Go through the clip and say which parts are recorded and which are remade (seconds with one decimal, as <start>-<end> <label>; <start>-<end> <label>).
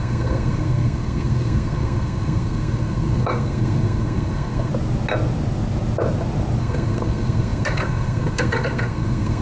0.0-4.7 remade; 4.7-6.6 recorded; 6.6-9.4 remade